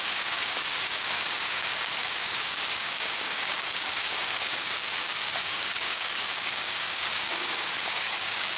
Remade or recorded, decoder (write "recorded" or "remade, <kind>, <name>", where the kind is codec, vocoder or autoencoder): remade, codec, DAC